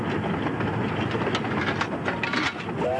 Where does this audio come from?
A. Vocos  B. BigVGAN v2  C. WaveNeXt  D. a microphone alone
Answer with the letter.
D